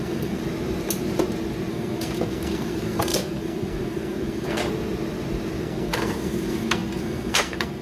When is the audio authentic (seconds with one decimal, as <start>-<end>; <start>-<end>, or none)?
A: 0.4-1.7; 4.6-5.6